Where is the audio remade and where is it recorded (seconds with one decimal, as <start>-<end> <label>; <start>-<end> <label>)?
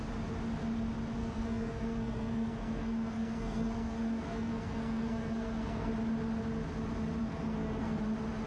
0.0-1.2 recorded; 1.2-5.9 remade; 5.9-7.2 recorded; 7.2-8.0 remade; 8.0-8.5 recorded